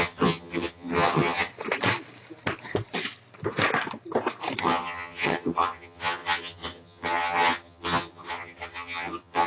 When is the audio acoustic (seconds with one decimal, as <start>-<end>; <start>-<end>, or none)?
1.5-4.6